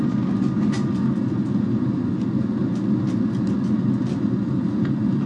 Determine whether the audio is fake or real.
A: real